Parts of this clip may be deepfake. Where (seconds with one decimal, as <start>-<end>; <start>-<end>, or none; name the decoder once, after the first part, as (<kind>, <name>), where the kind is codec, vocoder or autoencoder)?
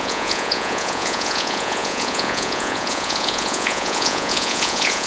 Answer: 0.0-5.1 (vocoder, Vocos)